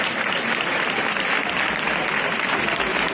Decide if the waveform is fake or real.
real